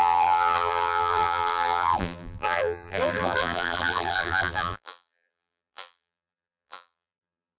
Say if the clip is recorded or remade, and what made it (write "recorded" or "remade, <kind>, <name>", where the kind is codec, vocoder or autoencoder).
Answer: remade, vocoder, BigVGAN v2